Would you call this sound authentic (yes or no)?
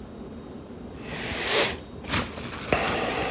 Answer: yes